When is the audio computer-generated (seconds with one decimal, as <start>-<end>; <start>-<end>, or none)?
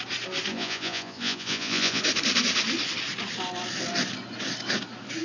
0.5-2.0